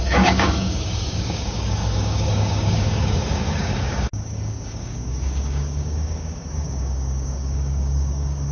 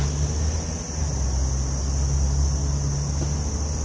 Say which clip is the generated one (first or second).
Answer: first